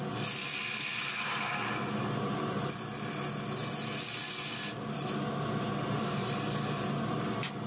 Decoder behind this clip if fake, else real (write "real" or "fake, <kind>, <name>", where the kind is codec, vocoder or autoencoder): real